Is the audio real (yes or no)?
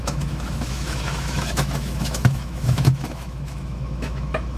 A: no